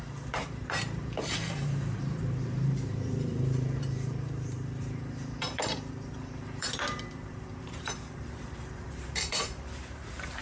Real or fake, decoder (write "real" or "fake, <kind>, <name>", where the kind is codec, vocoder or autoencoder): fake, vocoder, BigVGAN v2